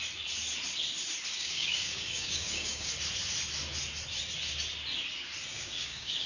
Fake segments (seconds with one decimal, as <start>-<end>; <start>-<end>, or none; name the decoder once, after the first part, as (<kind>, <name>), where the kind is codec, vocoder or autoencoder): 1.3-2.9 (codec, DAC); 5.5-6.3